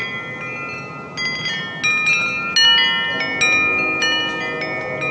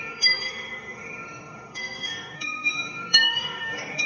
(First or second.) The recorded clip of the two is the first